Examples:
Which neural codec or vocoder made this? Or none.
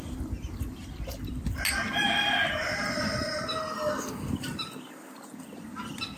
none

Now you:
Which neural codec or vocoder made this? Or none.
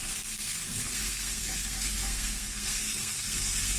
codec, SNAC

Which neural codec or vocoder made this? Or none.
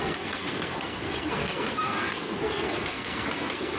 codec, SNAC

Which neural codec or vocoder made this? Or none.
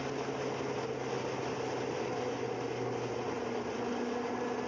none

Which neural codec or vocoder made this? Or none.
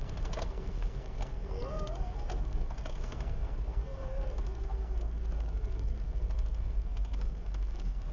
codec, SNAC